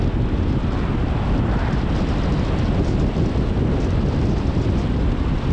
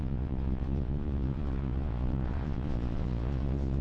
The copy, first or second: second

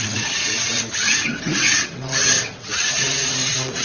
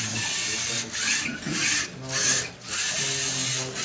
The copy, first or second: first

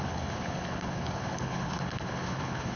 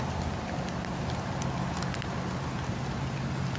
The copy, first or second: first